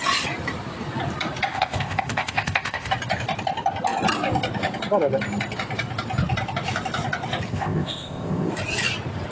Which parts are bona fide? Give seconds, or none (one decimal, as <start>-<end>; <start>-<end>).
0.0-1.5; 2.9-7.5; 8.5-9.3